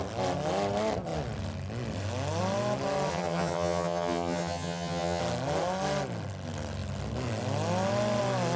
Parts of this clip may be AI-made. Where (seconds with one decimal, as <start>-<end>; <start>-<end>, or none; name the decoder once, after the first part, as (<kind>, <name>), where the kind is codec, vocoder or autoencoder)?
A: 3.1-5.2 (vocoder, HiFi-GAN)